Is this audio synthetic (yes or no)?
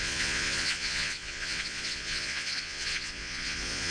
yes